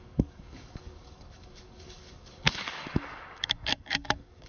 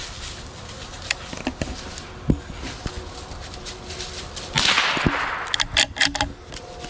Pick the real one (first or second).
second